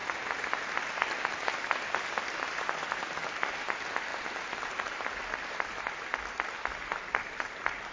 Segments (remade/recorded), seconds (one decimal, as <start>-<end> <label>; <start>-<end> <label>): 0.0-7.9 recorded